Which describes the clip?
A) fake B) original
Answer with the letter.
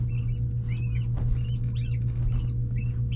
B